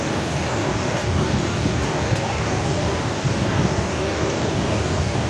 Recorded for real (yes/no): no